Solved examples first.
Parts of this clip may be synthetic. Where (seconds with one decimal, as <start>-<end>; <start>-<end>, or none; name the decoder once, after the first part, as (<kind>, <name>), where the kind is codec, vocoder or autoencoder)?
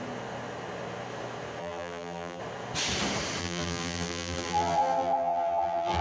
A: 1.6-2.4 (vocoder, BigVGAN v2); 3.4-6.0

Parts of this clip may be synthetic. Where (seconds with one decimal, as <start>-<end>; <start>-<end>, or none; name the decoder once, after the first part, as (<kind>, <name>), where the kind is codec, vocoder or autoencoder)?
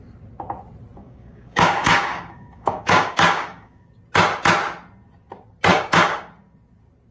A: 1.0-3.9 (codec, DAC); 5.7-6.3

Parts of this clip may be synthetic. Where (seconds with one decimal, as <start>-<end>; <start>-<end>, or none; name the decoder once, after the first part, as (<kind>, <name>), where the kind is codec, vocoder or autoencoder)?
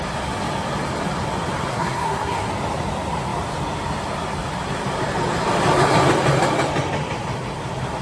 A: 1.7-2.5 (codec, SNAC)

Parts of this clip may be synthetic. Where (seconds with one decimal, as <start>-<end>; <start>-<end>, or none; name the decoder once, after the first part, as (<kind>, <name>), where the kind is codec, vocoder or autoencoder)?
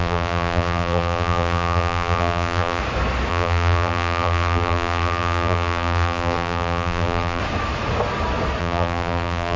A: 0.0-2.8 (vocoder, BigVGAN v2); 3.3-7.4; 8.6-9.6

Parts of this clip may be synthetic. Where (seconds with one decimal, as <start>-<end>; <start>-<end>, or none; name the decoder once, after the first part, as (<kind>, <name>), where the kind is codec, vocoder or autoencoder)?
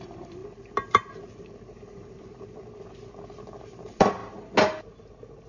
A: 0.0-0.4 (vocoder, BigVGAN v2); 3.6-4.2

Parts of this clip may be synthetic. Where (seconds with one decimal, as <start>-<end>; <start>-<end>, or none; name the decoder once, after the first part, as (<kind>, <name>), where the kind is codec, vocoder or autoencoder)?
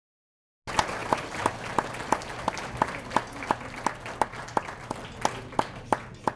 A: none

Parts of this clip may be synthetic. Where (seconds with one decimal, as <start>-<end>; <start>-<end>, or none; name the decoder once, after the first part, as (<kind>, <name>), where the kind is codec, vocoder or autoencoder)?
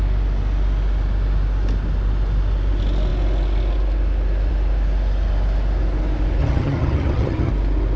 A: 6.4-7.5 (vocoder, HiFi-GAN)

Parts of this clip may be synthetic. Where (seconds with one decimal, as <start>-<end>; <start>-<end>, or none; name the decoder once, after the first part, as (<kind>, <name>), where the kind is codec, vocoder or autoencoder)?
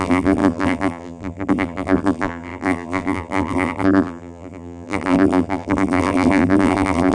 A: 0.0-7.1 (vocoder, BigVGAN v2)